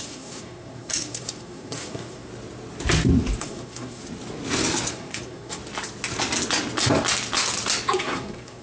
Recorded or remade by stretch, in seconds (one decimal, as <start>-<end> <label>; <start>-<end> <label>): 0.0-2.3 remade; 2.3-3.4 recorded; 3.4-4.0 remade; 4.0-4.9 recorded; 4.9-5.6 remade; 5.6-8.0 recorded; 8.0-8.6 remade